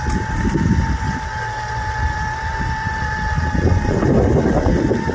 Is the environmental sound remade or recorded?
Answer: recorded